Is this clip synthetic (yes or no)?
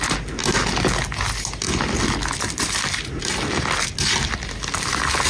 no